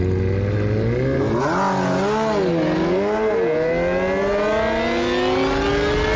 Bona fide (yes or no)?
yes